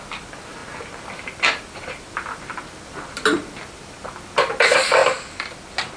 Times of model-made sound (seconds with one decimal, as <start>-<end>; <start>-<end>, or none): none